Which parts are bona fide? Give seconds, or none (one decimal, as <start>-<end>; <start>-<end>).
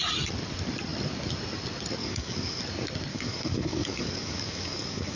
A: 0.0-2.0; 2.6-3.1